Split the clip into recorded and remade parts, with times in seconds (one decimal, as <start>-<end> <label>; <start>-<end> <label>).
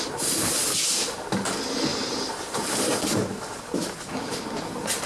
0.0-1.9 recorded; 1.9-3.7 remade; 3.7-5.1 recorded